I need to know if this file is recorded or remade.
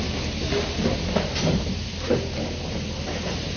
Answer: recorded